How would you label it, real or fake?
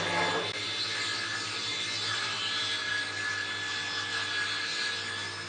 real